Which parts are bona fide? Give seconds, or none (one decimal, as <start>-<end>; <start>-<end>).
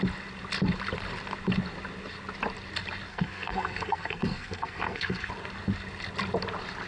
0.0-3.1; 5.3-6.9